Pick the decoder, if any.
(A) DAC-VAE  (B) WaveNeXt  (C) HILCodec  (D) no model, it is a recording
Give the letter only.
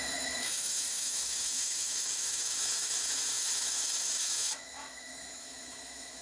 A